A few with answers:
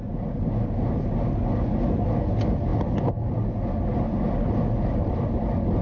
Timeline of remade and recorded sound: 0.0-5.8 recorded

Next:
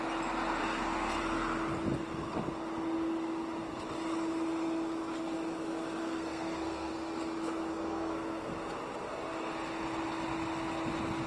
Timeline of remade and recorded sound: 0.0-0.6 recorded; 0.6-1.2 remade; 1.2-6.0 recorded; 6.0-6.9 remade; 6.9-7.7 recorded; 7.7-8.5 remade; 8.5-11.3 recorded

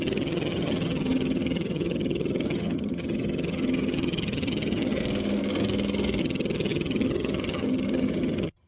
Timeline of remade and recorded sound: 0.0-5.0 remade; 5.0-6.2 recorded; 6.2-8.7 remade

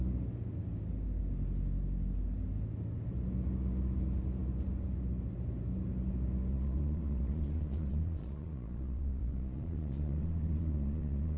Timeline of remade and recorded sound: 0.0-6.5 recorded; 6.5-11.4 remade

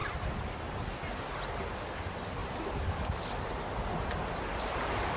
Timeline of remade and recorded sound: 0.0-0.6 remade; 0.6-2.4 recorded; 2.4-4.2 remade; 4.2-5.2 recorded

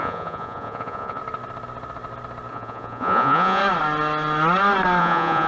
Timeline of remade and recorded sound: 0.0-1.2 remade; 1.2-2.5 recorded; 2.5-3.6 remade; 3.6-5.0 recorded; 5.0-5.5 remade

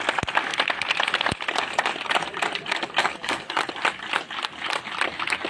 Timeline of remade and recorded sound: 0.0-3.0 recorded; 3.0-3.7 remade; 3.7-5.5 recorded